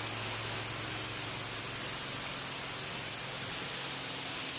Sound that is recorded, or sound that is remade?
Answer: recorded